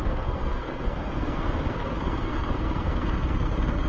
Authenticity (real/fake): fake